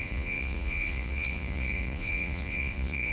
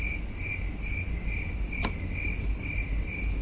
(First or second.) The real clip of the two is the second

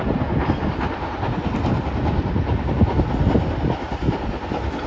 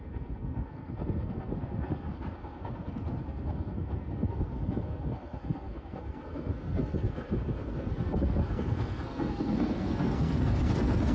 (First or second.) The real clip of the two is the first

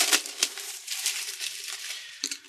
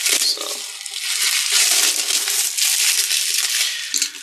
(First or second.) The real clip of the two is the second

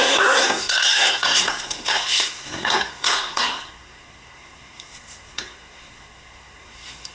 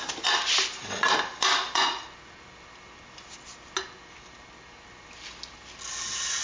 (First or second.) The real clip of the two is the second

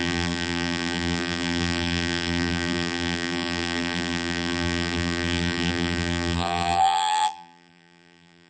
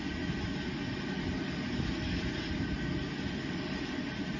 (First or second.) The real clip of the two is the second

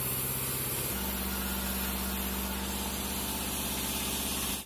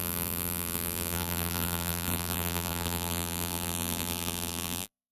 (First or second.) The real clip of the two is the first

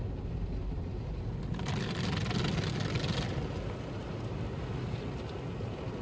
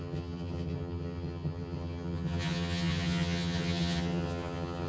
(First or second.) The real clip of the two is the first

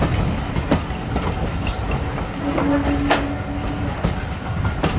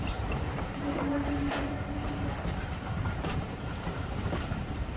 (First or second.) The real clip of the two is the first